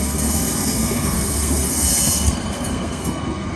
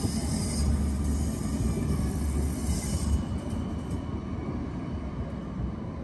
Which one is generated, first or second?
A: first